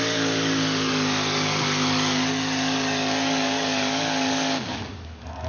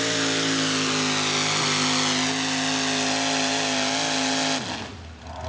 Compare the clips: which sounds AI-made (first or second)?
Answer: first